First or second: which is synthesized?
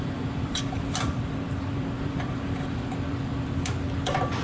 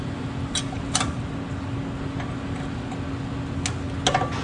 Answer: first